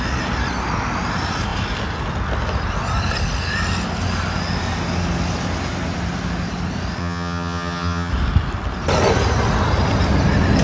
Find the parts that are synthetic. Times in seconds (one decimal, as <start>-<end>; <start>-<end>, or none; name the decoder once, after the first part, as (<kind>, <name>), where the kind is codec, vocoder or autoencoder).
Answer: 7.0-8.1 (vocoder, HiFi-GAN)